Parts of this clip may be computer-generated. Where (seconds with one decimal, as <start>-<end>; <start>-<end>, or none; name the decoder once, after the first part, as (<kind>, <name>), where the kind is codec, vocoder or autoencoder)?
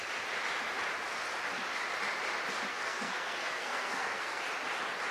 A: 2.7-4.4 (codec, SNAC)